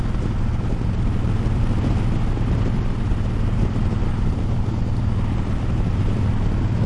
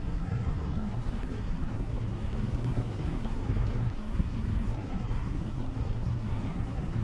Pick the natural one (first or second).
first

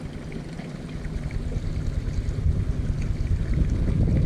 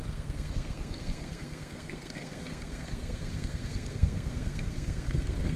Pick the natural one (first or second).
first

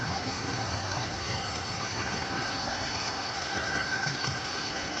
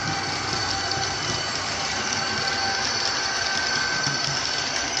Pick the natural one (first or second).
second